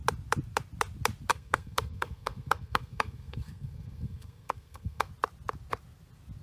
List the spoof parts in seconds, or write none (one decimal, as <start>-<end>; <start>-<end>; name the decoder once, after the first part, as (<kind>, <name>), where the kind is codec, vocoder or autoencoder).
1.3-5.1 (codec, SNAC)